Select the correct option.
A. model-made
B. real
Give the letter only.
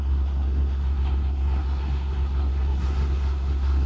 A